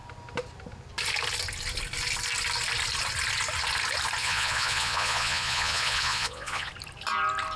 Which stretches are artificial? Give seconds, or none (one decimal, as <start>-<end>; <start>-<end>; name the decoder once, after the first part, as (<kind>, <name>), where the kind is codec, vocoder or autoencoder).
4.2-6.7 (vocoder, Vocos)